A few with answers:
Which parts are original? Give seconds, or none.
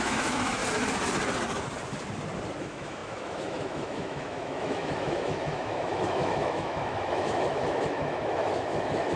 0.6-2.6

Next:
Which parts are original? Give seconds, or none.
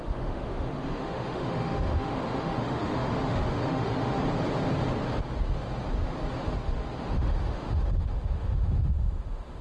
4.2-7.0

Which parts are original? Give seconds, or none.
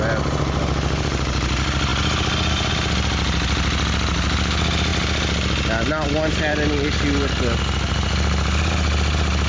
0.0-9.5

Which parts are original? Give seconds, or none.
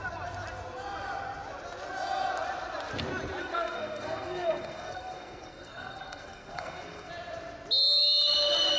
0.0-3.4; 7.1-8.8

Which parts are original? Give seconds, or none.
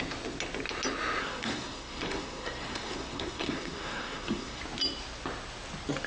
0.0-1.2; 4.6-6.1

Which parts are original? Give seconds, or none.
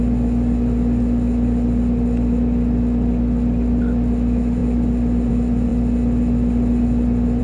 0.0-7.4